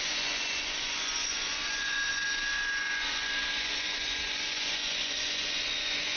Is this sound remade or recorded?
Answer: remade